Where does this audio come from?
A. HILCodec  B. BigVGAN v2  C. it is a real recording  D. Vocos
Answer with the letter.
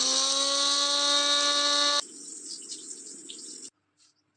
C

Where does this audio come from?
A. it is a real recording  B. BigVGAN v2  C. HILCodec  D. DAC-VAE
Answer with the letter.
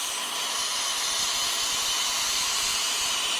A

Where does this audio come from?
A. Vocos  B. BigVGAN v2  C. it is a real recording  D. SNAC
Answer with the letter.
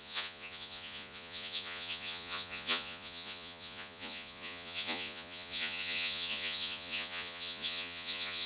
A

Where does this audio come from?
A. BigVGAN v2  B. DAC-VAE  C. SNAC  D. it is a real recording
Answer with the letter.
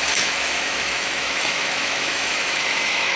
B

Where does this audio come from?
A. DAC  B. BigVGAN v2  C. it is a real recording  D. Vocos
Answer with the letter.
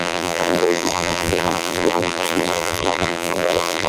B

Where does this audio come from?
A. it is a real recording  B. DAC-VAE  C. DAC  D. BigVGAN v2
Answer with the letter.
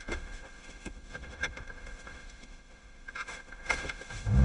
B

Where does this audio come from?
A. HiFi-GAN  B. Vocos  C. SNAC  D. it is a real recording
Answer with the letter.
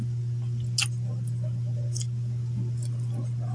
D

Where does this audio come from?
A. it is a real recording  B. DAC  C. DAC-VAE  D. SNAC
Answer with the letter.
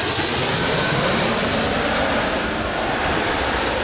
A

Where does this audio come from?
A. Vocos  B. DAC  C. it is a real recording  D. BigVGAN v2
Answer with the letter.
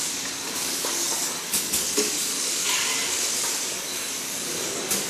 B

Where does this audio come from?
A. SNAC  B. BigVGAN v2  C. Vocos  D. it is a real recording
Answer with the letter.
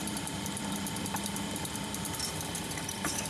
B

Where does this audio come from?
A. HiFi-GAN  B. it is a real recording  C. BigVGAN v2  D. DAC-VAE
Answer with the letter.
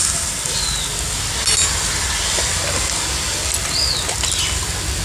B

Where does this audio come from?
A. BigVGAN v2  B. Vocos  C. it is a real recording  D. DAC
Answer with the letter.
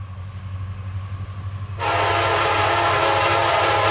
C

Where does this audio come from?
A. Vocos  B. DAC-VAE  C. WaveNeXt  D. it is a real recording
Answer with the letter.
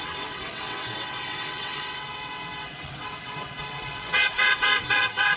C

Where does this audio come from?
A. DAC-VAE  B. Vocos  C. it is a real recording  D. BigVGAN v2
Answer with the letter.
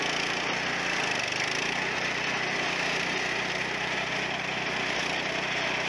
C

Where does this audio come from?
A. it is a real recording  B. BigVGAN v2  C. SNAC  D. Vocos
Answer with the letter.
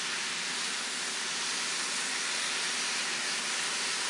A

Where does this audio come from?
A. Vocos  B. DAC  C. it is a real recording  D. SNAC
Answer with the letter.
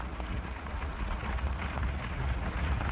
A